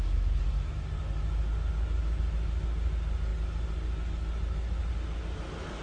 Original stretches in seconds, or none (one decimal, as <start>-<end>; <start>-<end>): 0.0-5.8

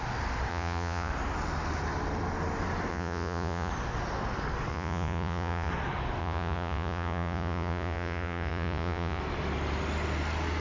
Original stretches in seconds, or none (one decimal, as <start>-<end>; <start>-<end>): 0.0-0.5; 1.1-2.9; 3.7-4.7; 5.7-6.2; 9.2-10.6

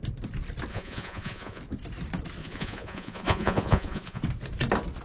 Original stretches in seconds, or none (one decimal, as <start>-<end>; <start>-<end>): 0.0-0.7; 1.6-2.4; 4.2-5.0

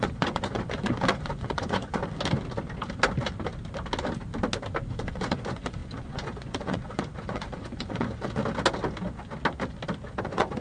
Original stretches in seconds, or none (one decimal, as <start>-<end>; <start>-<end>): 2.0-4.9; 8.4-10.2

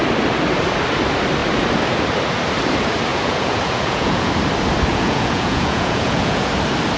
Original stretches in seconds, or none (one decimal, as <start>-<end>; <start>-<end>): 0.0-3.1; 4.3-4.9; 6.5-7.0

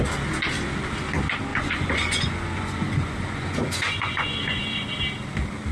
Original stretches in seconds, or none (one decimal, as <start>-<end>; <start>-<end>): 0.0-1.5; 4.9-5.7